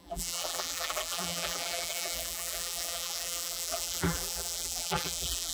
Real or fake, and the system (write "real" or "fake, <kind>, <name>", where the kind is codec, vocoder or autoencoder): fake, vocoder, BigVGAN v2